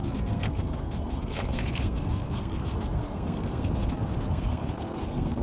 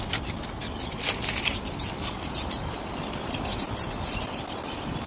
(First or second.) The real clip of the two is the second